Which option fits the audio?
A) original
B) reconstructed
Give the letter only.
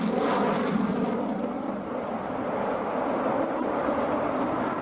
A